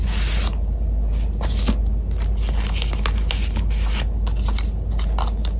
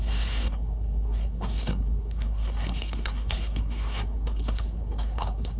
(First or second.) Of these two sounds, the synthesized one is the second